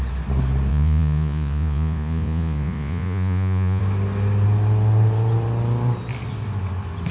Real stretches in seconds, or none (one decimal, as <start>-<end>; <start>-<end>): 0.0-0.7; 3.8-7.1